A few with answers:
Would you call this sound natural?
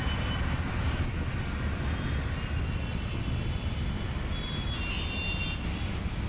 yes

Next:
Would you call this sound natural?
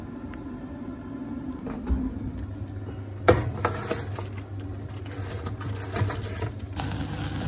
yes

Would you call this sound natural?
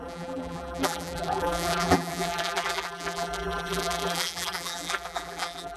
no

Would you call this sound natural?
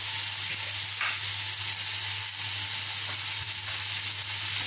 yes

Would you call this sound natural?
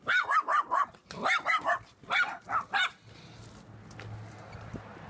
yes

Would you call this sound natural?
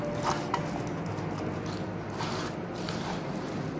yes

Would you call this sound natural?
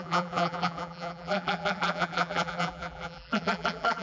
no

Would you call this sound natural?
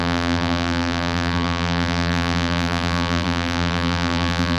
no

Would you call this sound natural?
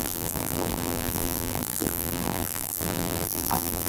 no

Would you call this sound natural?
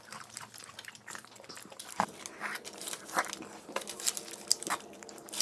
no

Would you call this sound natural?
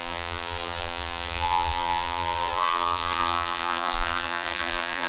no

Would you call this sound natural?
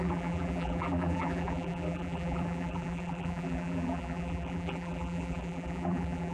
no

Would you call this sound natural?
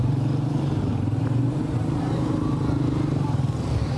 no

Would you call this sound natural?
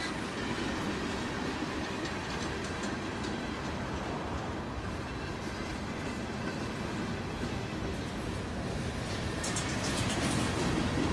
yes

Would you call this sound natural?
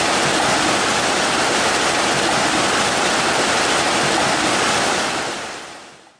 no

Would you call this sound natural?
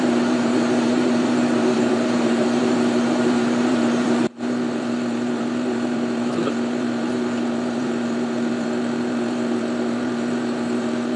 no